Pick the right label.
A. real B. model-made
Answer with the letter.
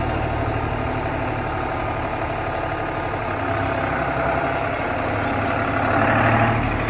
A